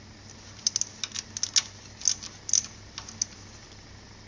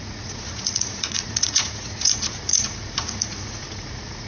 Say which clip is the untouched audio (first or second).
first